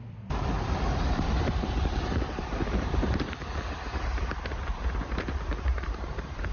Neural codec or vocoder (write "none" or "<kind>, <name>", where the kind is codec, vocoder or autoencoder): vocoder, BigVGAN v2